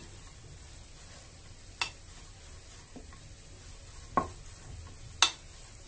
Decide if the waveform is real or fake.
real